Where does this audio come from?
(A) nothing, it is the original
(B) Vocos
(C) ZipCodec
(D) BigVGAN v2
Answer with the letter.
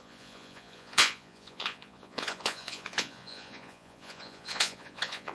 B